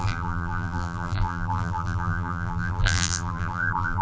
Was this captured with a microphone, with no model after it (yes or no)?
no